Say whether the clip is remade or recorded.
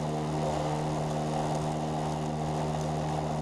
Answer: recorded